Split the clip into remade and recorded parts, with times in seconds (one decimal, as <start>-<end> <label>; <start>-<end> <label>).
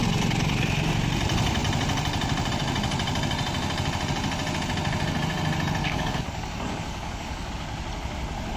0.0-5.8 recorded; 5.8-7.5 remade; 7.5-8.6 recorded